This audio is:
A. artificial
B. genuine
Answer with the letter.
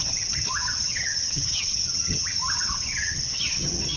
A